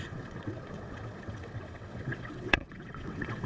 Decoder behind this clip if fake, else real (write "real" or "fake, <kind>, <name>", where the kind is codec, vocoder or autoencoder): fake, vocoder, WaveNeXt